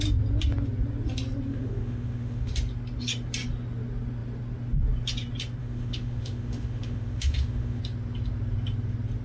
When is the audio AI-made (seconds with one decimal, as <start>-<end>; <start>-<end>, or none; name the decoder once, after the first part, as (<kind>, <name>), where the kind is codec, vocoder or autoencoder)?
1.5-2.5 (autoencoder, DAC-VAE); 5.6-7.8